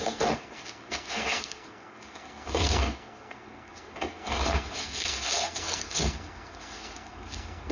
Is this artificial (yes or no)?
yes